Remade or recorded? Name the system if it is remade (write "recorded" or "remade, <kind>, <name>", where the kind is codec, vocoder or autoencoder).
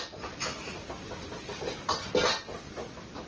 recorded